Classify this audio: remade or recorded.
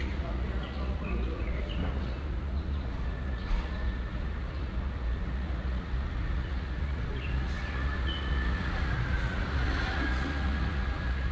remade